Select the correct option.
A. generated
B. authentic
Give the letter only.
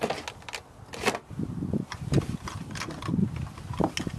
B